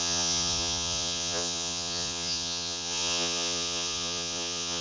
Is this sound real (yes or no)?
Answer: no